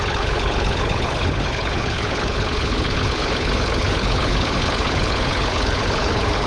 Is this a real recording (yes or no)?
no